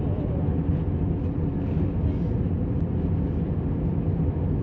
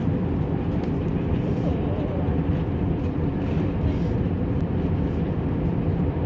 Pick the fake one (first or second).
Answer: second